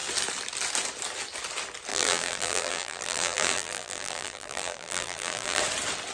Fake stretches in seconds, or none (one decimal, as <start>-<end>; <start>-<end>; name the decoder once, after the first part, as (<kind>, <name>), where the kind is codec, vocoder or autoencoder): 1.9-5.6 (vocoder, BigVGAN v2)